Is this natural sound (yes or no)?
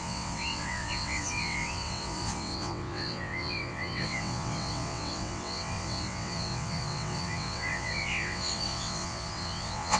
no